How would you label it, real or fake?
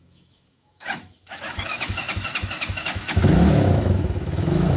fake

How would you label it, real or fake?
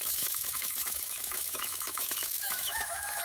fake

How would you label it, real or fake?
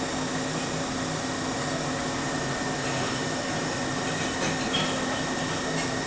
real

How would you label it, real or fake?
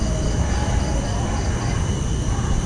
real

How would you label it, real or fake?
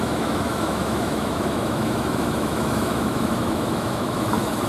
fake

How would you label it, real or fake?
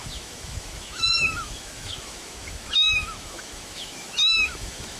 fake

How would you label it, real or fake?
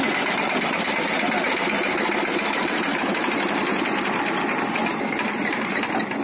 real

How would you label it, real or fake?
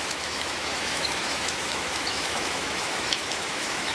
fake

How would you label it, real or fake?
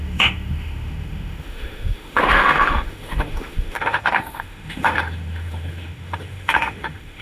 fake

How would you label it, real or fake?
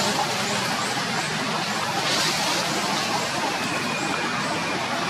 real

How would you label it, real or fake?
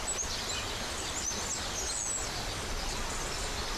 real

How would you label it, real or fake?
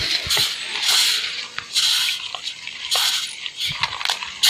real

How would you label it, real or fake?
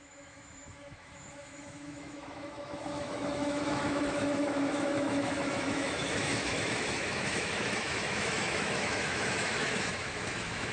fake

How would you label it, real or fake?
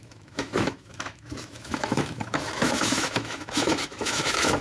fake